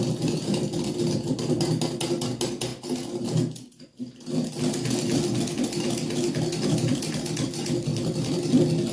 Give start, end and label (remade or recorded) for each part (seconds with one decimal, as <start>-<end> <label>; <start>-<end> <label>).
0.0-7.9 recorded; 7.9-8.5 remade; 8.5-8.9 recorded

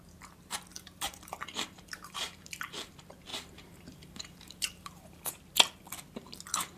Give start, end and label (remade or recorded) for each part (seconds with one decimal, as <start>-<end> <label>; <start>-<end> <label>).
0.0-0.7 recorded; 0.7-2.9 remade; 2.9-3.3 recorded; 3.3-5.3 remade; 5.3-6.8 recorded

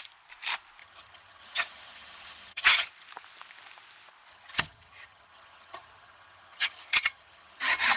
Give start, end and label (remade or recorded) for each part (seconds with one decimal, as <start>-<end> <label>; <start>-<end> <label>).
0.0-0.8 recorded; 0.8-2.9 remade; 2.9-4.3 recorded; 4.3-8.0 remade

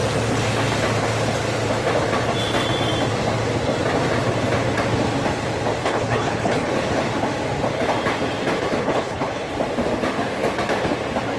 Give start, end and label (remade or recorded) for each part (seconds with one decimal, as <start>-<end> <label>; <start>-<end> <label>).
0.0-5.8 recorded; 5.8-6.7 remade; 6.7-8.8 recorded; 8.8-9.5 remade; 9.5-11.4 recorded

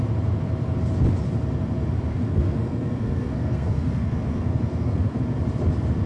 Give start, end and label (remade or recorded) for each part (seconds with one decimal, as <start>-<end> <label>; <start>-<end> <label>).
0.0-2.1 recorded; 2.1-5.2 remade; 5.2-6.1 recorded

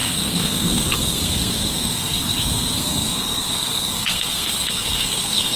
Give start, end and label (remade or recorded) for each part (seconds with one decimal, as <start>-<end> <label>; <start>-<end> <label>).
0.0-5.6 remade

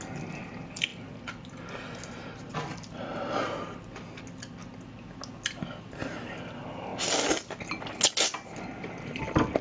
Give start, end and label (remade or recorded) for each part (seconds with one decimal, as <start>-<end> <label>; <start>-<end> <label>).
0.0-9.6 recorded

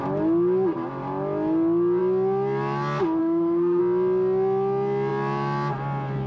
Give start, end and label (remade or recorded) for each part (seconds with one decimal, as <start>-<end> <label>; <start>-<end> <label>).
0.0-3.2 recorded; 3.2-3.8 remade; 3.8-6.3 recorded